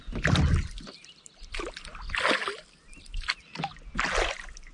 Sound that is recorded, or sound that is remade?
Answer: recorded